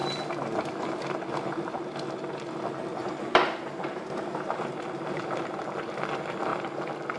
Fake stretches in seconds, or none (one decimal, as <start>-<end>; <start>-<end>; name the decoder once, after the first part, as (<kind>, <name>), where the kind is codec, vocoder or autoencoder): 3.0-5.4 (vocoder, BigVGAN v2)